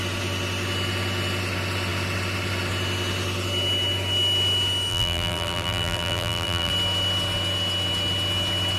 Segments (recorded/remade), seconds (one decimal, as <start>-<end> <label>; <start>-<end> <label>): 0.0-4.9 recorded; 4.9-6.7 remade; 6.7-8.8 recorded